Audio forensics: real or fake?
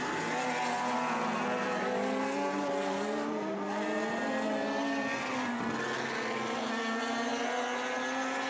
real